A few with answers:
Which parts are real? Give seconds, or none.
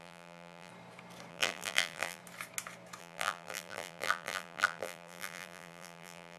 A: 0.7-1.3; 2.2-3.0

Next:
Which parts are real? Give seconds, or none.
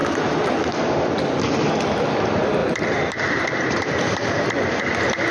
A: 0.0-2.6; 4.8-5.3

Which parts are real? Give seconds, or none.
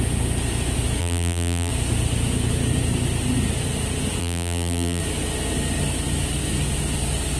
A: 0.0-1.0; 1.7-4.2; 5.0-7.4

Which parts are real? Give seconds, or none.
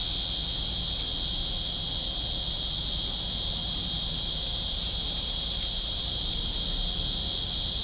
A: 0.0-3.6; 6.9-7.8